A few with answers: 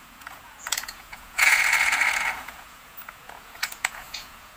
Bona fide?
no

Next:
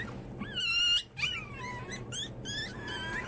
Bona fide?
yes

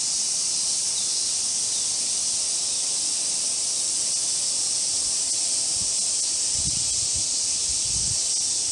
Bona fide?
yes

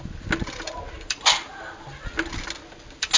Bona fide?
yes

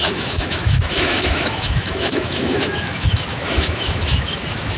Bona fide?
no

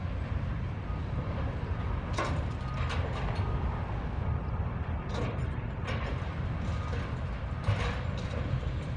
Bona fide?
yes